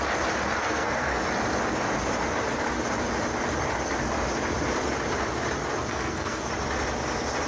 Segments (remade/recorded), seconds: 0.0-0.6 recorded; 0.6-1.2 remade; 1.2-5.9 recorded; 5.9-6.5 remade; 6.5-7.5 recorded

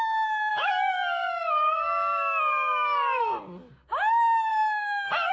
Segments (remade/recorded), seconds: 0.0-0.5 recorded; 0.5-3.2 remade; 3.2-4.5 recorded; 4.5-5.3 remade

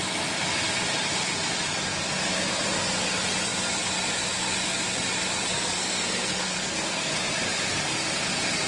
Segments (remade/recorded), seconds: 0.0-5.5 recorded; 5.5-7.1 remade; 7.1-8.7 recorded

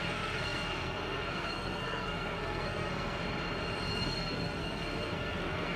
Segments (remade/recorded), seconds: 0.0-3.2 remade; 3.2-3.9 recorded; 3.9-5.8 remade

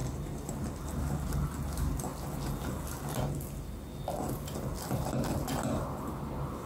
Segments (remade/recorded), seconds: 0.0-6.7 recorded

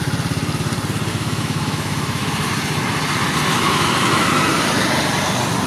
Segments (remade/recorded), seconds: 0.0-1.1 recorded; 1.1-2.5 remade; 2.5-3.5 recorded; 3.5-4.3 remade; 4.3-5.7 recorded

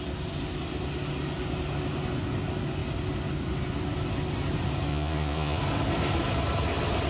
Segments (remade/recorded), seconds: 0.0-4.9 recorded; 4.9-5.6 remade; 5.6-7.1 recorded

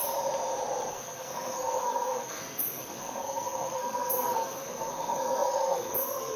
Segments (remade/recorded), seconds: 0.0-0.9 recorded; 0.9-6.4 remade